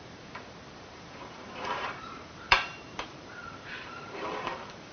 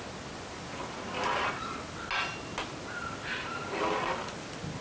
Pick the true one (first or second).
second